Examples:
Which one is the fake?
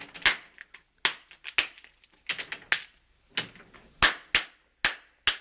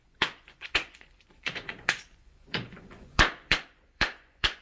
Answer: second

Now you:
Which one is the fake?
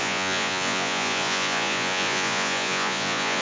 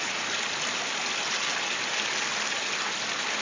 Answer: first